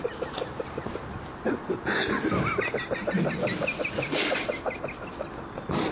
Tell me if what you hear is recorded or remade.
recorded